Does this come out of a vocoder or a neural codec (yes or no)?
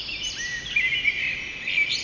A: no